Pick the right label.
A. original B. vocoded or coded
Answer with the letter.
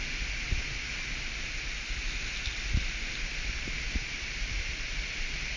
A